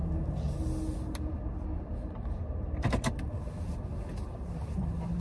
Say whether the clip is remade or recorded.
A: recorded